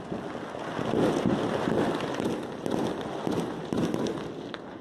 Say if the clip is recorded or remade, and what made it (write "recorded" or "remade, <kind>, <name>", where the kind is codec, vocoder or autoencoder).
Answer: recorded